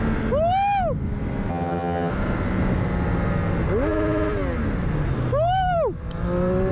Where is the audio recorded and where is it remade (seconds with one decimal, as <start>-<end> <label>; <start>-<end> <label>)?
0.0-1.5 recorded; 1.5-2.1 remade; 2.1-6.7 recorded